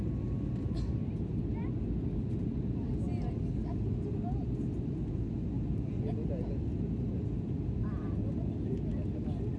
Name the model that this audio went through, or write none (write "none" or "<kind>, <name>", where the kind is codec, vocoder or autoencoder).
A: none